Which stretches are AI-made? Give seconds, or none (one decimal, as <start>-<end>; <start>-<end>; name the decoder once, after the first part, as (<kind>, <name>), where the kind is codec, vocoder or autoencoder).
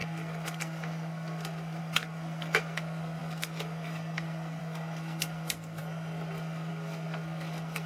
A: 0.0-7.9 (codec, SNAC)